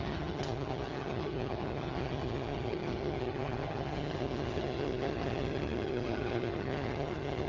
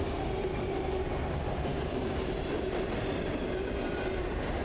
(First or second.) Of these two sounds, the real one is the second